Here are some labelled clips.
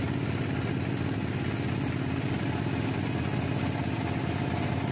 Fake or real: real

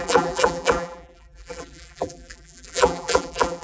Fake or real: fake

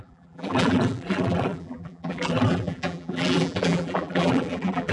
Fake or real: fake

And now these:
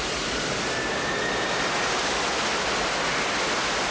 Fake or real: real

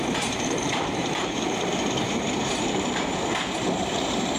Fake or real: fake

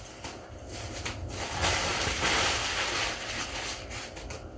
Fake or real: real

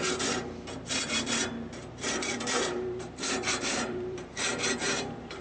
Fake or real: fake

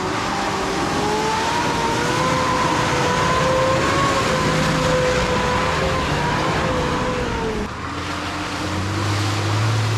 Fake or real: real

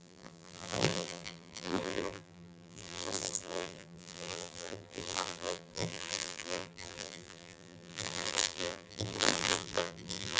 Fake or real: fake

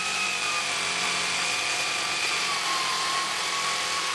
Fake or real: fake